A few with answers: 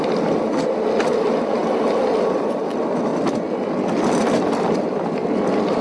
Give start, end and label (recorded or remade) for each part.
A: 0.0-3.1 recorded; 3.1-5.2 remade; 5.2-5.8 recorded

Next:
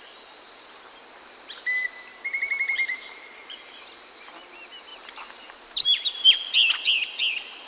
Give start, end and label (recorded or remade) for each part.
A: 0.0-2.1 recorded; 2.1-3.7 remade; 3.7-4.9 recorded; 4.9-6.3 remade; 6.3-7.7 recorded

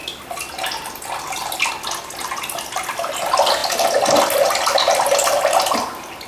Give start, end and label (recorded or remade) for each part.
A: 0.0-6.3 recorded

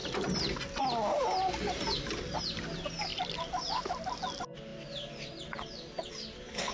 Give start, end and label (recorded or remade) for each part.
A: 0.0-3.1 recorded; 3.1-4.2 remade; 4.2-6.7 recorded

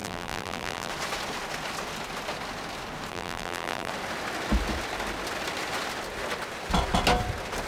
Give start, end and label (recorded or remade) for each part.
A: 0.0-0.9 remade; 0.9-3.1 recorded; 3.1-3.9 remade; 3.9-7.7 recorded

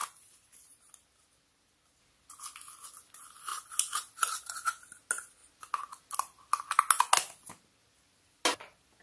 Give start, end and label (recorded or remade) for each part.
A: 0.0-9.0 recorded

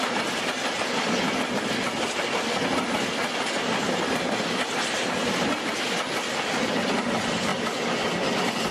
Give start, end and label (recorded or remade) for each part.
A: 0.0-8.7 recorded